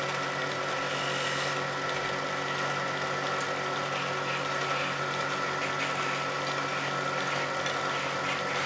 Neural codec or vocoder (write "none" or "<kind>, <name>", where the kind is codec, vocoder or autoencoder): none